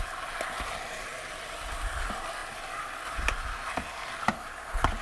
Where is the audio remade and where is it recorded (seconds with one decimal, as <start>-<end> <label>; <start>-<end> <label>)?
0.0-5.0 recorded

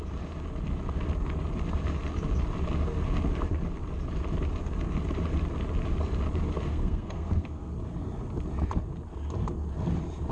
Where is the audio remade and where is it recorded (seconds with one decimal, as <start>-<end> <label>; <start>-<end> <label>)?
0.0-6.7 recorded; 6.7-7.7 remade; 7.7-10.3 recorded

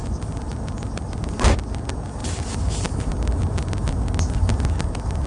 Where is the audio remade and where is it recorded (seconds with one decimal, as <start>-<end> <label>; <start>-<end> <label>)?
0.0-5.3 recorded

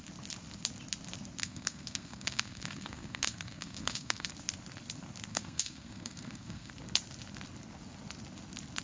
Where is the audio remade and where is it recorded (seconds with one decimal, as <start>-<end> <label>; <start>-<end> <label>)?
0.0-1.4 recorded; 1.4-4.3 remade; 4.3-5.3 recorded; 5.3-6.7 remade; 6.7-8.8 recorded

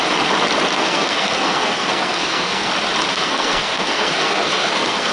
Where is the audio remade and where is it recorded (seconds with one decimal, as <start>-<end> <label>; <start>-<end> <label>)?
0.0-0.8 recorded; 0.8-2.7 remade; 2.7-3.1 recorded; 3.1-5.1 remade

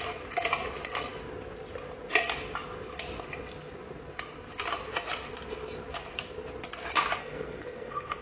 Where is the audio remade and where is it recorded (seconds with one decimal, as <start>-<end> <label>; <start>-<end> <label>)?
0.0-7.2 recorded; 7.2-8.2 remade

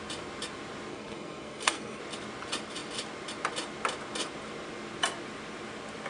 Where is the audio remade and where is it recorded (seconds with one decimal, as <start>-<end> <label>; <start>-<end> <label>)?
0.0-0.9 recorded; 0.9-2.0 remade; 2.0-6.1 recorded